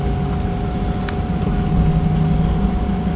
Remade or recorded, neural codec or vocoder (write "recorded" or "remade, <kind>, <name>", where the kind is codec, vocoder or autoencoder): recorded